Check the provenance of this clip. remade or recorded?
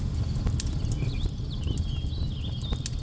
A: recorded